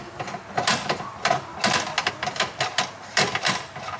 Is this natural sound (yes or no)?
yes